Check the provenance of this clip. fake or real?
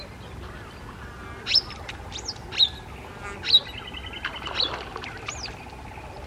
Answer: real